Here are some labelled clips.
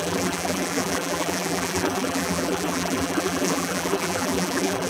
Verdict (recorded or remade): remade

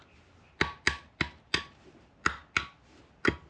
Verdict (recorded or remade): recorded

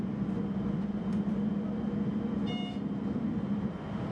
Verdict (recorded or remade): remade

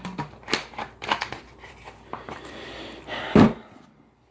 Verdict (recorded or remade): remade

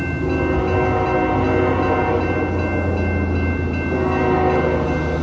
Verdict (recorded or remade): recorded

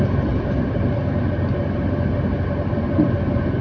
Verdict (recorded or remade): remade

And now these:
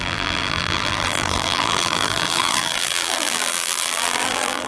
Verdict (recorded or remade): remade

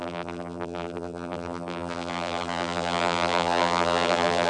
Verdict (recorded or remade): remade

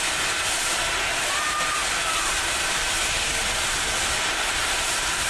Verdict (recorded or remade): recorded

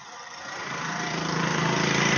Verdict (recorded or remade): remade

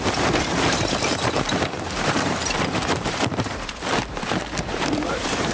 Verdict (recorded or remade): remade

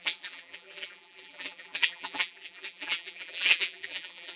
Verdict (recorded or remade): remade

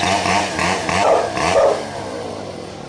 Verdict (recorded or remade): remade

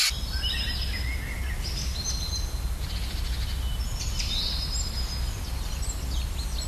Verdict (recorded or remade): recorded